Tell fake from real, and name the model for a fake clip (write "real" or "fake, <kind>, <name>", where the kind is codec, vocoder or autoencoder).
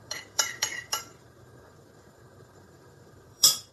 fake, vocoder, BigVGAN v2